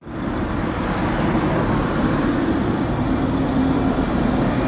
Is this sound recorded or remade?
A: remade